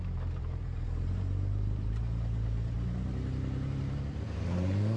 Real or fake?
fake